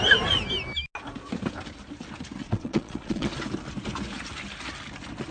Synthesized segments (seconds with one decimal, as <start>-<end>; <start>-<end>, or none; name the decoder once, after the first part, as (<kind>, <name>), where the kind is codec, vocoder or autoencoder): 2.4-3.3 (vocoder, Vocos)